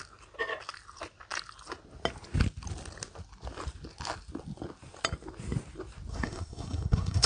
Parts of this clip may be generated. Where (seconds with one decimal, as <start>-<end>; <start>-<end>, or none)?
6.1-7.3